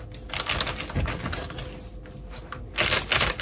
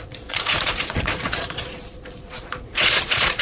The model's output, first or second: second